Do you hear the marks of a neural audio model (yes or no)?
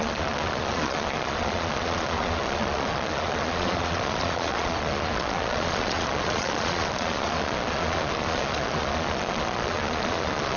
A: yes